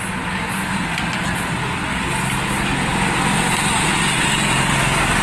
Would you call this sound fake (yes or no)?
no